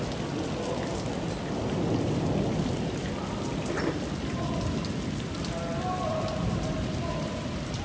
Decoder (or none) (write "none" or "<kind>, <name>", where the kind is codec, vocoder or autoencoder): none